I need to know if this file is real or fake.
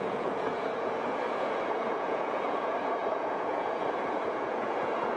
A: fake